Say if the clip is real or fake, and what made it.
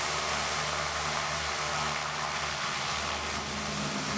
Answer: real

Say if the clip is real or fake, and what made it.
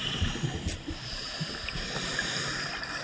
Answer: real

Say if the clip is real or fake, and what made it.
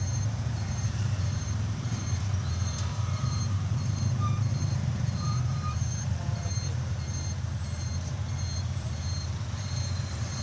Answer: fake, vocoder, BigVGAN v2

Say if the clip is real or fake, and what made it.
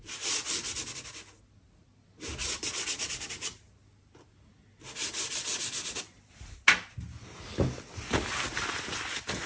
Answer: real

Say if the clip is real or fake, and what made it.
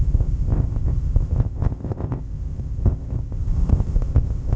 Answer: fake, codec, ZipCodec